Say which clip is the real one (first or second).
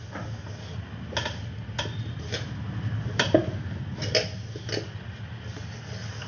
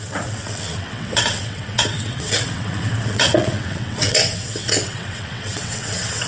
first